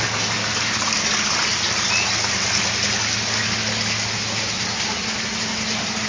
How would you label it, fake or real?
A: real